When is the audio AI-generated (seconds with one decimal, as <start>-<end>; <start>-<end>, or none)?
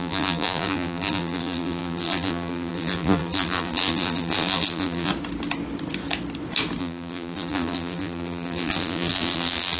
0.0-5.1; 6.8-9.8